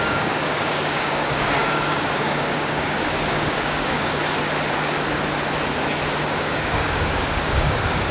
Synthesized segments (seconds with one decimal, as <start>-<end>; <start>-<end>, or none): 0.0-4.2; 6.2-8.1